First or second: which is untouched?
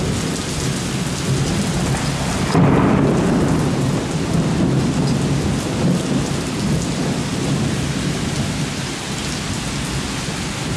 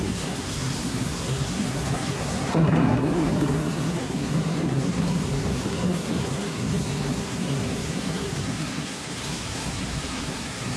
first